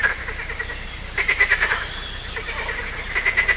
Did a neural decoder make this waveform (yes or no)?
no